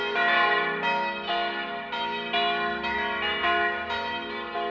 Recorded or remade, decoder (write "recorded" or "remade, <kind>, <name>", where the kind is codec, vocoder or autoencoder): recorded